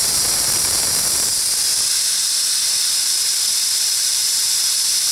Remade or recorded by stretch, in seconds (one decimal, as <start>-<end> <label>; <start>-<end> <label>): 0.0-1.4 remade; 1.4-4.0 recorded; 4.0-5.1 remade